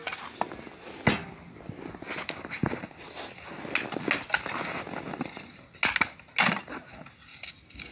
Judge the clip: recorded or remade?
recorded